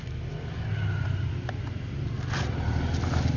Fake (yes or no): no